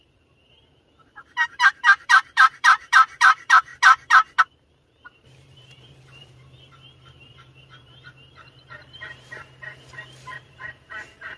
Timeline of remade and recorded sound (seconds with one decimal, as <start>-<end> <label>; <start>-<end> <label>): 0.0-3.7 remade; 3.7-4.4 recorded; 4.4-11.4 remade